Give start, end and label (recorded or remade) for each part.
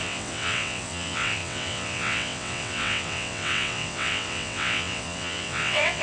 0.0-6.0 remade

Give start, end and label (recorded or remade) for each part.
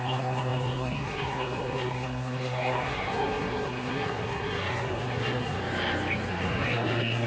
0.0-5.6 remade; 5.6-6.3 recorded; 6.3-7.3 remade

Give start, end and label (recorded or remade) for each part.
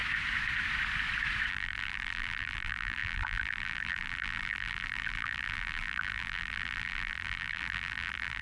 0.0-1.5 recorded; 1.5-8.4 remade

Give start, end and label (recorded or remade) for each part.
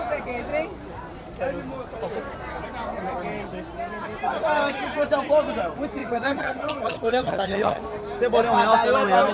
0.0-6.0 recorded; 6.0-7.8 remade; 7.8-9.3 recorded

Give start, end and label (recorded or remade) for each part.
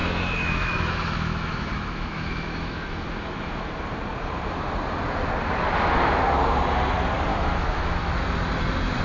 0.0-3.6 remade; 3.6-7.3 recorded; 7.3-8.1 remade; 8.1-9.0 recorded